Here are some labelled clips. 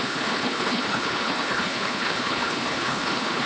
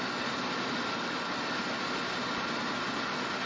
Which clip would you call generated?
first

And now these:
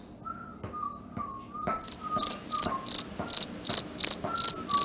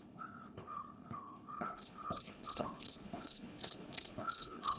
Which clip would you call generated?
second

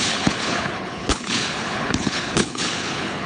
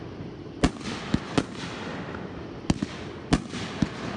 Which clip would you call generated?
first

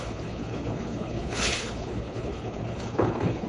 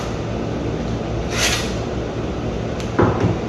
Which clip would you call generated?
first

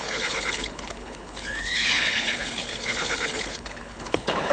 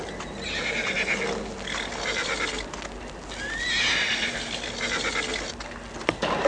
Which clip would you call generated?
first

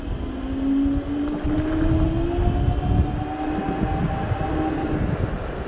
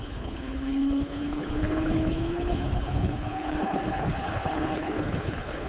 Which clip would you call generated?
second